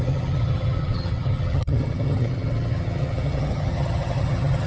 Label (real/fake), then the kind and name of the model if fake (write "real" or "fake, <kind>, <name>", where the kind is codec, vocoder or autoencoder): fake, vocoder, HiFi-GAN